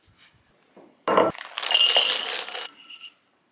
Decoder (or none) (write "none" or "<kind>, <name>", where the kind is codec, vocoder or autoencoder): none